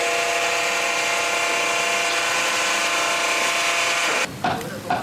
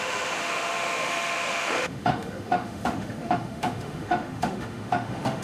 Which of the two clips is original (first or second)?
first